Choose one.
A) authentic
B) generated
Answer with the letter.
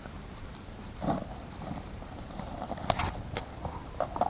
A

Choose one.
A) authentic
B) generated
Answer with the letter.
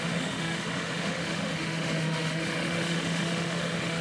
B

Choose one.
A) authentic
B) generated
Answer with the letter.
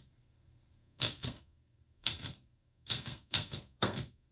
B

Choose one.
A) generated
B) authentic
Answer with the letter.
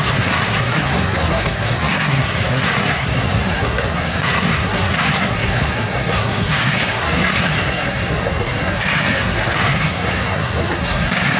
A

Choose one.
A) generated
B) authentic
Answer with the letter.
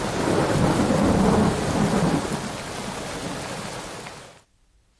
B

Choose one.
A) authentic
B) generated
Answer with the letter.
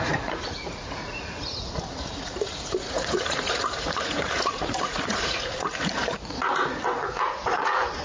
B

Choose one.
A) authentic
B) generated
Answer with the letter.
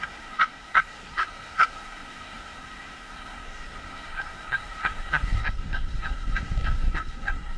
B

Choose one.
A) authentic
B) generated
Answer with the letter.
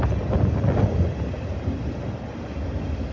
A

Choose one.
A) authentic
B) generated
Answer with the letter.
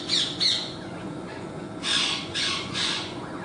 B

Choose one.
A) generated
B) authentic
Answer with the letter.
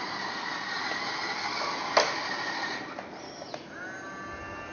B